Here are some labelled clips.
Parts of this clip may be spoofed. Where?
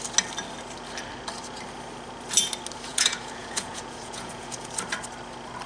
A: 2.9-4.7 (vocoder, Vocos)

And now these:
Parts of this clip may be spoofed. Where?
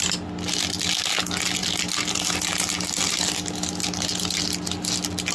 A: none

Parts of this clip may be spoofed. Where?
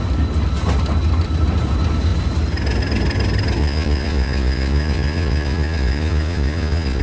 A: 3.6-7.0 (vocoder, Vocos)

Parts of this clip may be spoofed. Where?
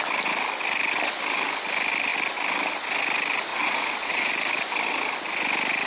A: 3.5-4.3 (vocoder, Vocos)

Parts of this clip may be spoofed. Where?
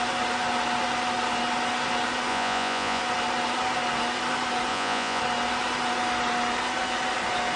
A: 2.3-3.0 (vocoder, Vocos); 4.7-5.2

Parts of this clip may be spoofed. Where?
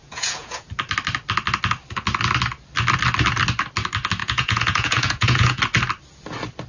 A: 0.0-0.7 (vocoder, Vocos); 4.2-5.6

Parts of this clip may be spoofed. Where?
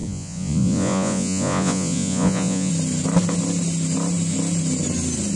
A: 0.0-2.7 (vocoder, Vocos)